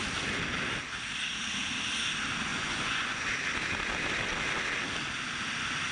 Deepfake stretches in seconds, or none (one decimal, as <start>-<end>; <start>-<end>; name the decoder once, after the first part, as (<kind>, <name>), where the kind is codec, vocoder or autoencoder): 2.5-3.3 (vocoder, Vocos)